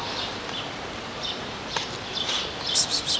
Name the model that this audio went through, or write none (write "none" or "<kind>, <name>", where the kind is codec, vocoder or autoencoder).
none